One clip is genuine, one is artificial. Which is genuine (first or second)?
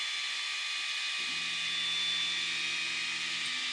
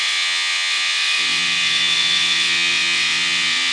first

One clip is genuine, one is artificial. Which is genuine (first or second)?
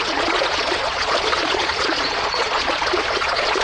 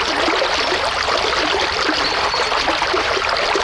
second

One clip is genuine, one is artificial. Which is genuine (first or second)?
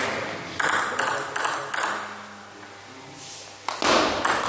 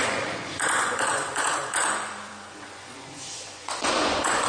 first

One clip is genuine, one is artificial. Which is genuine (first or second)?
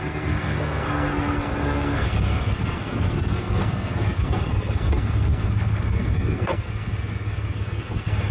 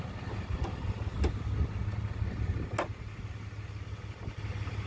second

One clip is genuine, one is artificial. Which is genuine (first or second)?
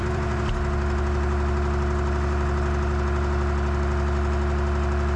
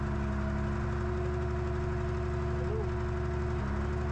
second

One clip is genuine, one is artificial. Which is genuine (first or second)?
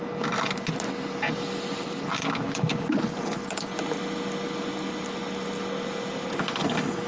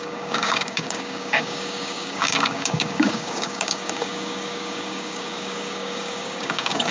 first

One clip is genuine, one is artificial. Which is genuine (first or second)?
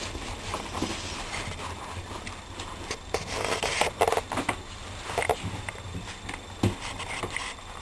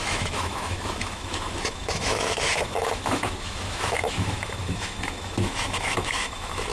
first